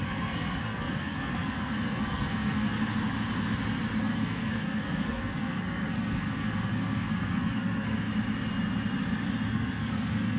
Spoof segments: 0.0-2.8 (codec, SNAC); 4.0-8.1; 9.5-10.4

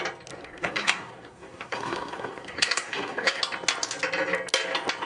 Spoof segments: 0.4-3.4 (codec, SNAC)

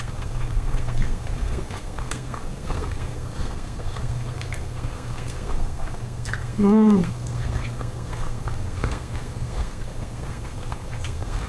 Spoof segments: 0.0-11.5 (codec, SNAC)

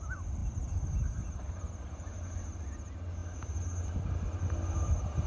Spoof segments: none

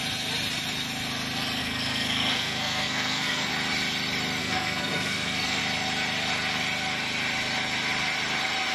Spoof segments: 1.6-3.5 (codec, SNAC); 4.4-5.6

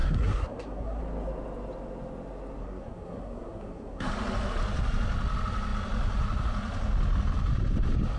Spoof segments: 0.0-1.0 (codec, SNAC); 2.6-4.1